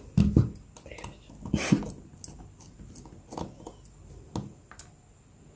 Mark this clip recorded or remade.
recorded